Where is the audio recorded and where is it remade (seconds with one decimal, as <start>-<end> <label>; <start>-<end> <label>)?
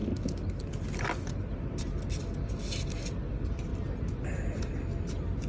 0.0-5.5 recorded